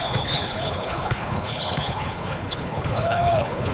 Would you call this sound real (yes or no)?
no